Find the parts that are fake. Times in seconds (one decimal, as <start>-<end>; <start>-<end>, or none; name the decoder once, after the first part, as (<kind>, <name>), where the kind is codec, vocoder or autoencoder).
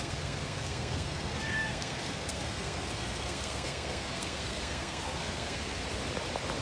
0.0-5.8 (codec, SNAC)